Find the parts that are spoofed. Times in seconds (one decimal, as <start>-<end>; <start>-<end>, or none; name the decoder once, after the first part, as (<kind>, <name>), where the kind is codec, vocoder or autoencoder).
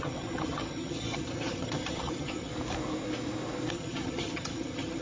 0.0-2.5 (vocoder, HiFi-GAN); 3.7-5.0